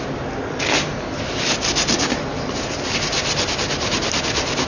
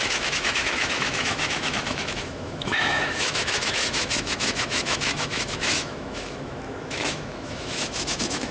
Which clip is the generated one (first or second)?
second